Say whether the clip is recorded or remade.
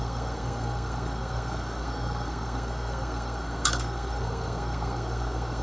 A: remade